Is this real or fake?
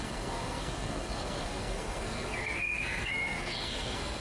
fake